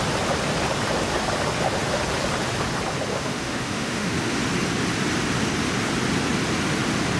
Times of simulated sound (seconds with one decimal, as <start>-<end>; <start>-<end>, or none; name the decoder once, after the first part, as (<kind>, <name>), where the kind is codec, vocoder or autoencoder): 3.1-4.3 (autoencoder, DAC-VAE)

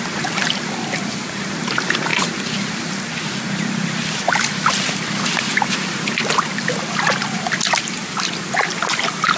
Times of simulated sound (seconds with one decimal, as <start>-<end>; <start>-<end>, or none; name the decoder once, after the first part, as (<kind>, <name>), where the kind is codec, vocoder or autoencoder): none

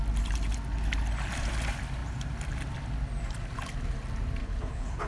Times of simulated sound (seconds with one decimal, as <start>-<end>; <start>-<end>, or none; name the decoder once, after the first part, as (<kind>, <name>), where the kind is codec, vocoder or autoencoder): 4.4-5.1 (codec, HILCodec)

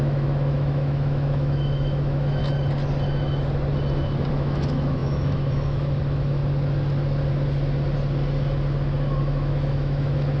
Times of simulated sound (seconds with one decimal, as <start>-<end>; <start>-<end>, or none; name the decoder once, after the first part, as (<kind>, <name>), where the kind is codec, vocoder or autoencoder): 0.0-2.4 (autoencoder, DAC-VAE); 4.3-6.4; 9.2-10.4

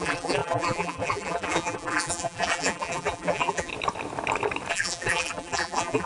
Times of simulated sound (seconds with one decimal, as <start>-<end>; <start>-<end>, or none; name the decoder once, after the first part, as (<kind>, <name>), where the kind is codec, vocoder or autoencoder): 0.0-3.7 (vocoder, BigVGAN v2); 4.7-6.1

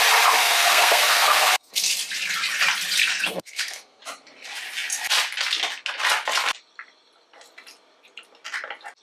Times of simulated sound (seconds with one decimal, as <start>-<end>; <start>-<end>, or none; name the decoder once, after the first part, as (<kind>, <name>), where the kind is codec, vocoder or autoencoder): 0.4-1.9 (codec, SNAC); 3.0-4.0

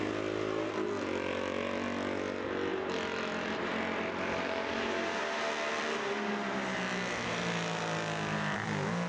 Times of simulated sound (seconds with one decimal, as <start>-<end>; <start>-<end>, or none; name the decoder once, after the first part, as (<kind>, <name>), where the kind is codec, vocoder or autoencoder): none